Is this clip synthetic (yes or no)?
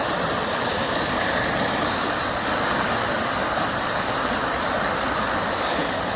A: no